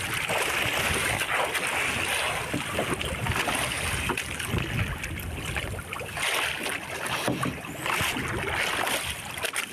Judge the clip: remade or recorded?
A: recorded